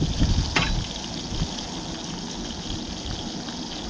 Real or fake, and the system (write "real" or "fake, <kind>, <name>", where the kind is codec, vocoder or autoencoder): real